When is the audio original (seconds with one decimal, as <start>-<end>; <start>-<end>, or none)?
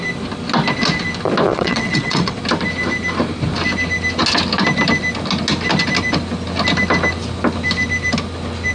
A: 0.0-1.5; 2.4-8.7